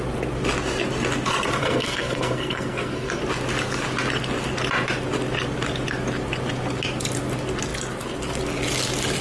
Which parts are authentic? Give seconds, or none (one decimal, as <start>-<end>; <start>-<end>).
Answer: 0.0-1.6; 3.2-9.2